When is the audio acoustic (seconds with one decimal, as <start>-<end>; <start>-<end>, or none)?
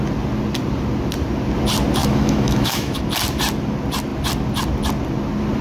0.0-2.0; 3.0-5.6